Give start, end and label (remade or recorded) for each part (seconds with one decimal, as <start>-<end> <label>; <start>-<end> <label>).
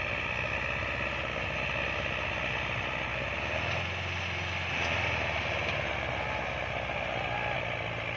0.0-8.2 recorded